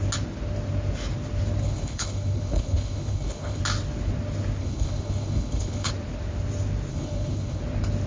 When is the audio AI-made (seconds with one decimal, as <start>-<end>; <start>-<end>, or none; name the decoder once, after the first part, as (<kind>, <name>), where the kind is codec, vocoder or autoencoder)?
1.6-3.6 (codec, HILCodec); 4.6-5.9; 6.9-7.6